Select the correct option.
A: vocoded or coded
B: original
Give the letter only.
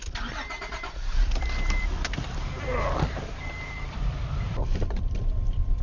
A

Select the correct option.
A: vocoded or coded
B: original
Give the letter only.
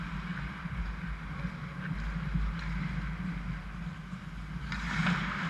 B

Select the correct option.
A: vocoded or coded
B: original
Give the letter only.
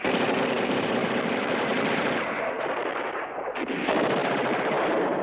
A